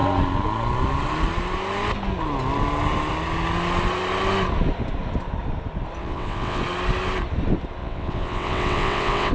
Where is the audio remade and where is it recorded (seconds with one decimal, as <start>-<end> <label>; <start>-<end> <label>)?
0.0-6.0 recorded; 6.0-6.6 remade; 6.6-7.8 recorded; 7.8-9.3 remade